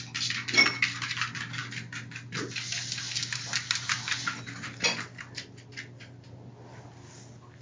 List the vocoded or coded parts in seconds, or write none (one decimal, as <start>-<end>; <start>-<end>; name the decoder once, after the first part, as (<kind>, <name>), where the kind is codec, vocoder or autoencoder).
none